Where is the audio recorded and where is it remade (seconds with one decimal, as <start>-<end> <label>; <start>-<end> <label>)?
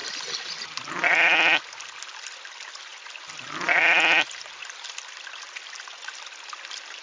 0.0-7.0 recorded